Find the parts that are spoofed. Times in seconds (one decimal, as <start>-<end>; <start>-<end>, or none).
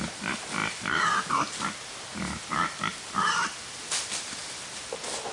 none